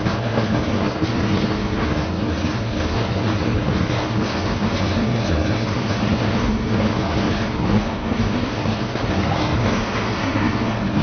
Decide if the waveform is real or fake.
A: fake